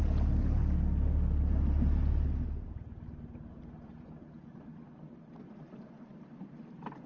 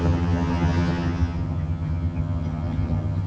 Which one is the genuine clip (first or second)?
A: first